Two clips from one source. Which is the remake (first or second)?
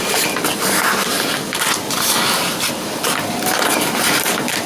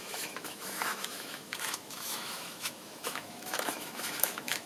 second